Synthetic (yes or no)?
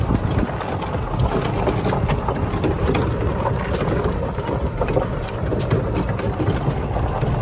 no